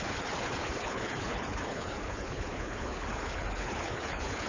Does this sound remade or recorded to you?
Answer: remade